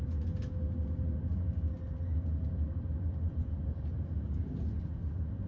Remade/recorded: recorded